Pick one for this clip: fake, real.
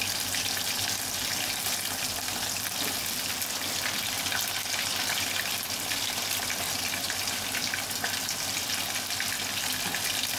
real